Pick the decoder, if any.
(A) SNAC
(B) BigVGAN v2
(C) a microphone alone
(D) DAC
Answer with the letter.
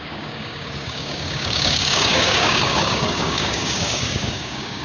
D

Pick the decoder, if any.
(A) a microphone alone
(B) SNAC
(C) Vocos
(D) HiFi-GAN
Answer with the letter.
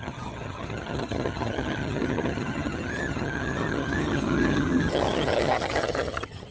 D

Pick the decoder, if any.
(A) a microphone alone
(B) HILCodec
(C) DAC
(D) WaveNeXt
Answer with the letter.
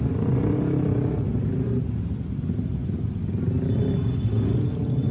A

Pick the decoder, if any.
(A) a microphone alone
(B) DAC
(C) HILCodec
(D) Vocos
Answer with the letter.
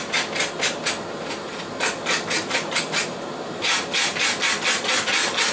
A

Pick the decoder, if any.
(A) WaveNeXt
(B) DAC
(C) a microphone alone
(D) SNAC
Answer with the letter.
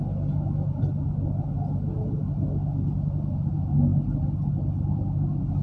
C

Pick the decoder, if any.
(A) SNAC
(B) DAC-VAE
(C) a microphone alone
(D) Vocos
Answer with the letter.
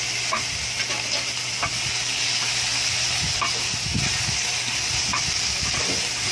C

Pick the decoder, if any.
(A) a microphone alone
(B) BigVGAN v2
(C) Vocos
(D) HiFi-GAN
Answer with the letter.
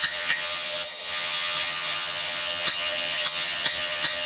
D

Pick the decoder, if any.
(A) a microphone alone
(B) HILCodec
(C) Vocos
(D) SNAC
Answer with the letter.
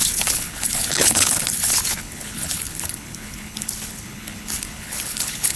B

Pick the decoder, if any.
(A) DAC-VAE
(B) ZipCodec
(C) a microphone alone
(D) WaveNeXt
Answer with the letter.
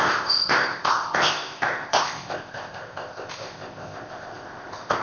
B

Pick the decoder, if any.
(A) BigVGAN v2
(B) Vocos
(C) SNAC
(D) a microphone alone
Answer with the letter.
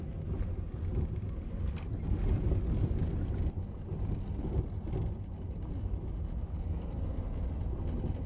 D